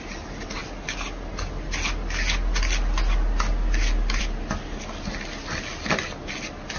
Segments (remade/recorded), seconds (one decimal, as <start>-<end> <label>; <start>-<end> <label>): 0.0-6.8 recorded